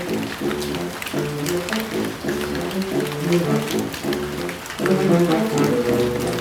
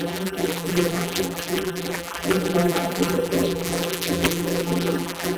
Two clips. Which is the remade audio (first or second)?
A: second